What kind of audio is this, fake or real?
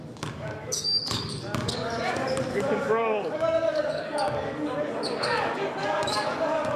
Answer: fake